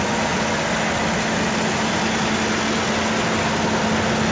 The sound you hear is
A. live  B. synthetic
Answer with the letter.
A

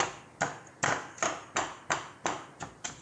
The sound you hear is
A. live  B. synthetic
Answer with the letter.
A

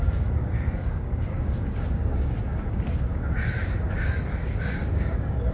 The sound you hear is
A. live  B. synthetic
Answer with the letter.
B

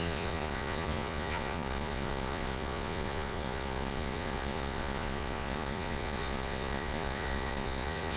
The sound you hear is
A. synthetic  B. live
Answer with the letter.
A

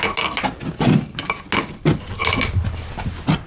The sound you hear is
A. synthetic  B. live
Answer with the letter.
B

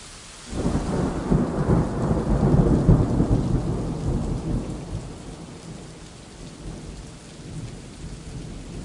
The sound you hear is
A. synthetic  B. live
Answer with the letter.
B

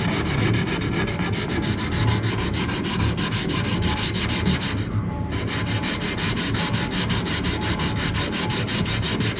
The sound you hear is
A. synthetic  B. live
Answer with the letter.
B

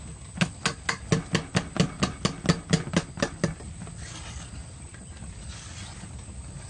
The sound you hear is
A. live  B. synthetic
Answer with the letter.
A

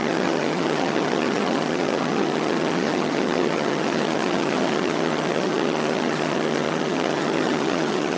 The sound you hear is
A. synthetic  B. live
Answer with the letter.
A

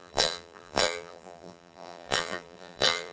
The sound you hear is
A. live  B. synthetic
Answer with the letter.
B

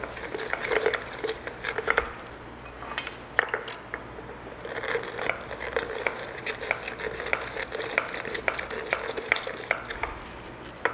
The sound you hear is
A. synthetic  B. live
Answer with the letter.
B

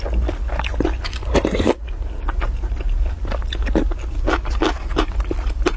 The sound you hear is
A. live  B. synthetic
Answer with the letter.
A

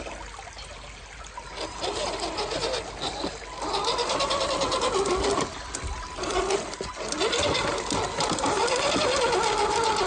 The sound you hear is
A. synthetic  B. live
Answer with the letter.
B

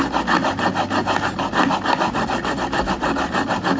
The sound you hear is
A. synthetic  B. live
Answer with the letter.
B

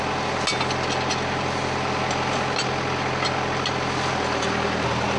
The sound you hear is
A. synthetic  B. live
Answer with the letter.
B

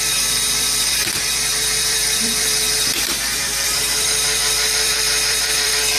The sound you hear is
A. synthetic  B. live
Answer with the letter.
A